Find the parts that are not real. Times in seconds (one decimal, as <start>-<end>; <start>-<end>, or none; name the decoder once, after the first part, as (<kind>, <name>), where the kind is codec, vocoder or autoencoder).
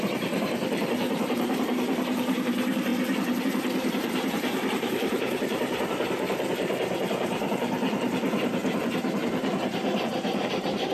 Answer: 0.0-2.9 (vocoder, BigVGAN v2); 3.4-10.9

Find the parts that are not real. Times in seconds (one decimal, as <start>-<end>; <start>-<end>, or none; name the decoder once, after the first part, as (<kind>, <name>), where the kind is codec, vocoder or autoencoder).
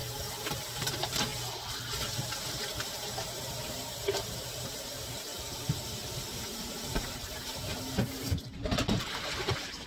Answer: 0.5-1.3 (vocoder, BigVGAN v2); 2.4-9.9